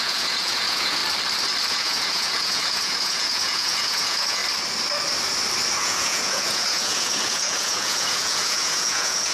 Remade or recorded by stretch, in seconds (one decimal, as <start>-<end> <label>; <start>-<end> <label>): 0.0-1.0 remade; 1.0-1.7 recorded; 1.7-4.4 remade; 4.4-5.8 recorded; 5.8-9.3 remade